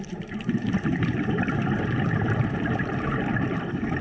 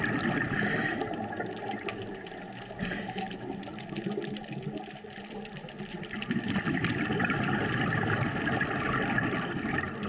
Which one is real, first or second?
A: second